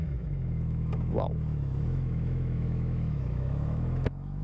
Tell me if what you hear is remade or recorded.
remade